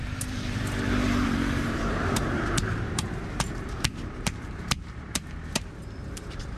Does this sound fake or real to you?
fake